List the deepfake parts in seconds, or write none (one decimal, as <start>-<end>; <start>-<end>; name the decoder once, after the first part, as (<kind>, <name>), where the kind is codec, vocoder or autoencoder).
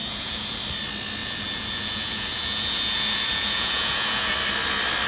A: 0.0-0.6 (vocoder, Vocos); 1.2-4.3